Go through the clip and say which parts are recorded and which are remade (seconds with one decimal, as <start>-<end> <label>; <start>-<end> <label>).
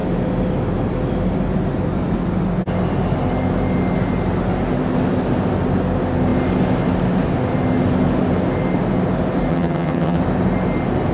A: 0.0-9.5 recorded; 9.5-10.2 remade; 10.2-11.1 recorded